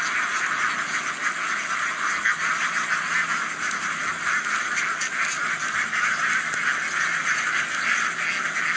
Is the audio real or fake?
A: real